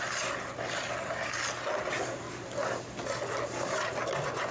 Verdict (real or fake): real